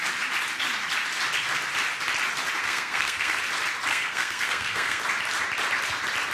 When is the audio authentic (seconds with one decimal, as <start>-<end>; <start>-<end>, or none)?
0.0-2.6; 3.4-3.9; 5.0-6.3